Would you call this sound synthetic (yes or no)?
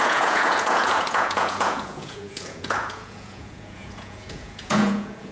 yes